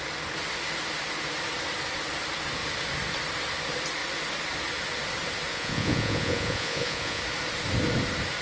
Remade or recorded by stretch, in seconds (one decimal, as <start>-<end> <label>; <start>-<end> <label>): 0.0-5.5 recorded; 5.5-7.2 remade; 7.2-8.4 recorded